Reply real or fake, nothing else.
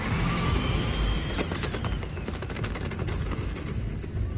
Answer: real